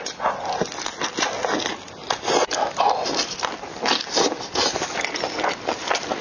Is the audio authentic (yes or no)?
yes